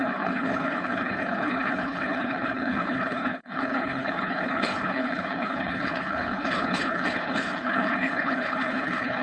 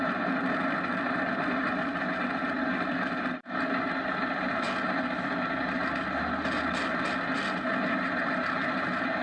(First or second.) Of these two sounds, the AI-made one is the first